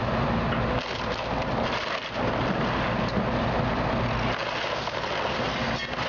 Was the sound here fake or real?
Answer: real